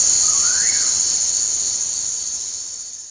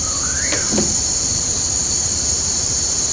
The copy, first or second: second